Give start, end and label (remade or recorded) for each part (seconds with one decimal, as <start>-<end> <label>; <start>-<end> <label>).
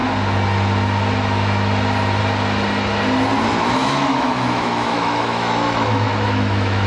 0.0-3.8 recorded; 3.8-6.9 remade